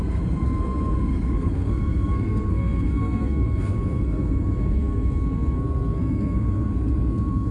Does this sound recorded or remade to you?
remade